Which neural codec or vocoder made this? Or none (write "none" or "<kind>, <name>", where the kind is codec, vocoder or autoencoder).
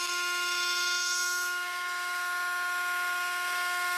autoencoder, DAC-VAE